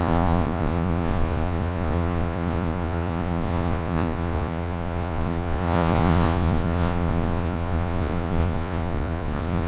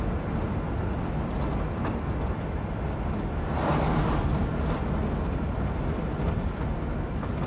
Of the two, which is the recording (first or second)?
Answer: second